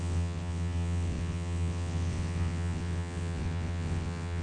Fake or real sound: fake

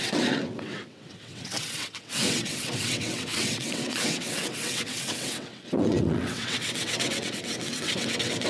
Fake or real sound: fake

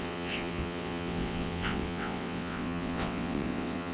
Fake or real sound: fake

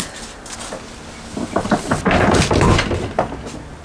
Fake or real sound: real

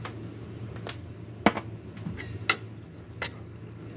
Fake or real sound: real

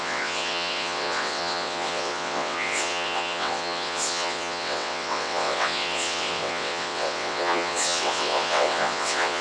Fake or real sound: fake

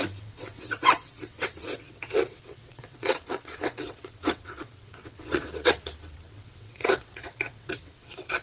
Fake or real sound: fake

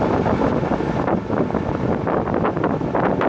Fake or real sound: real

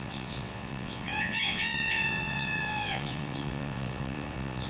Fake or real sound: fake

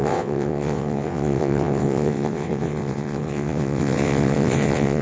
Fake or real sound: fake